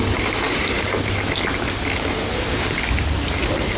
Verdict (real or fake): real